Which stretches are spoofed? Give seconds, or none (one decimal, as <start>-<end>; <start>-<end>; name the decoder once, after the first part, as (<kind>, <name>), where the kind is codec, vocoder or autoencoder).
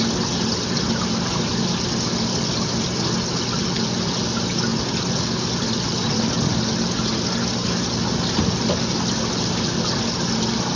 none